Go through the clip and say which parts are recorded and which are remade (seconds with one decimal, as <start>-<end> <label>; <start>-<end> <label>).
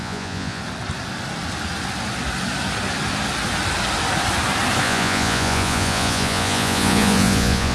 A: 0.0-0.6 remade; 0.6-4.8 recorded; 4.8-7.7 remade